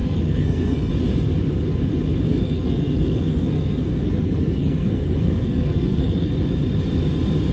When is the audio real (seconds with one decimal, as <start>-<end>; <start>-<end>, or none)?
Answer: 0.9-2.3; 6.3-7.5